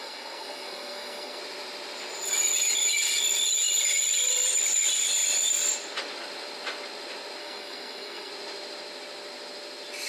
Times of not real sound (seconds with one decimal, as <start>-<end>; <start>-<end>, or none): 0.0-1.4; 7.4-8.3